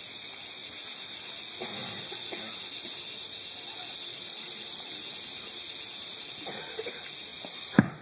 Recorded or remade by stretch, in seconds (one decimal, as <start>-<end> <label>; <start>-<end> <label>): 0.0-8.0 recorded